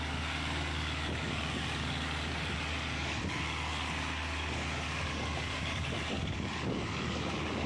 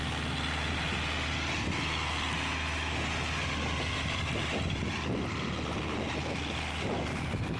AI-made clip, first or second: first